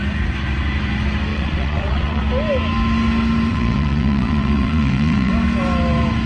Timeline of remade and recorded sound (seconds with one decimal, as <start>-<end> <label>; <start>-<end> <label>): 0.0-1.3 recorded; 1.3-2.2 remade; 2.2-3.5 recorded; 3.5-5.3 remade; 5.3-6.3 recorded